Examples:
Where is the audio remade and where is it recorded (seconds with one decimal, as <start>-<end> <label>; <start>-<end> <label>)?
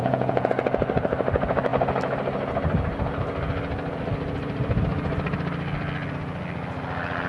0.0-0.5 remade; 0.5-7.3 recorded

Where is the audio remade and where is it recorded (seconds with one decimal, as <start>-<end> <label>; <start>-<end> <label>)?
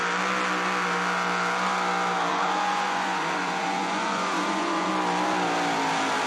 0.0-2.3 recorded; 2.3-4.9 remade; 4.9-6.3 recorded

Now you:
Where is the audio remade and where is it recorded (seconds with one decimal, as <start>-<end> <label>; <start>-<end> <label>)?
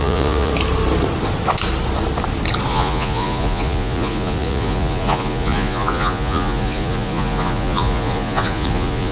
0.0-0.5 remade; 0.5-2.7 recorded; 2.7-9.1 remade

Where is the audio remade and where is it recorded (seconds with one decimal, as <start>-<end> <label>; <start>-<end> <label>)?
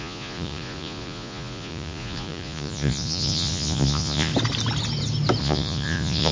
0.0-4.3 remade; 4.3-5.4 recorded; 5.4-6.3 remade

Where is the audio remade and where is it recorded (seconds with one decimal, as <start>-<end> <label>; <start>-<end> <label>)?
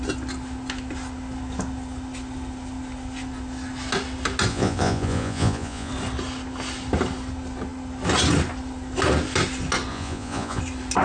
0.0-4.5 recorded; 4.5-5.9 remade; 5.9-9.9 recorded; 9.9-10.6 remade; 10.6-11.0 recorded